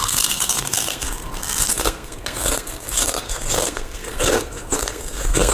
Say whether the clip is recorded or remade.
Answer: remade